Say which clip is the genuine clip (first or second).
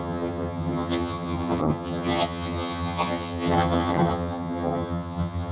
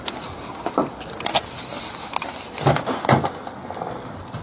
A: second